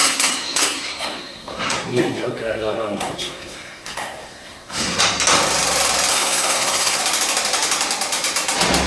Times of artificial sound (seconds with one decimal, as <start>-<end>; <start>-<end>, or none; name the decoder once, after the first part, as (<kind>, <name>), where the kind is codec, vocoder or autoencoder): 0.0-5.0 (codec, SNAC); 6.1-7.0